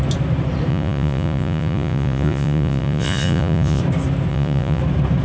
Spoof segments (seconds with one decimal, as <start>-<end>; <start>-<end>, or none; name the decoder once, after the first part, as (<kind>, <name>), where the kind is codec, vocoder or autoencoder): 0.7-3.8 (vocoder, Vocos); 4.3-4.8